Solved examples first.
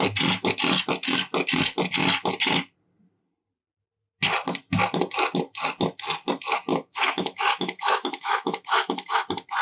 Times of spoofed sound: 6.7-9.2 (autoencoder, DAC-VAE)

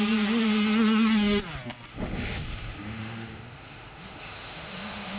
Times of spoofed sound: 1.9-5.2 (autoencoder, DAC-VAE)